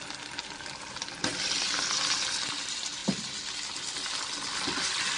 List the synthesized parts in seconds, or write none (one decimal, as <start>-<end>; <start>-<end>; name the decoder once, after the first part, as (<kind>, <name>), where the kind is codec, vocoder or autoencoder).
none